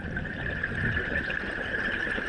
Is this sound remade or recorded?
recorded